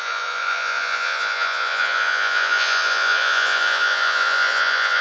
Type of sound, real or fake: fake